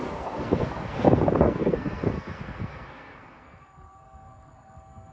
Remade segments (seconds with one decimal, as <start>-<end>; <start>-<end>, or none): 0.0-5.1